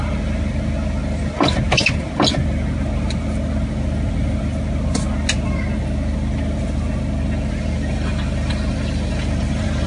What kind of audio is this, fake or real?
real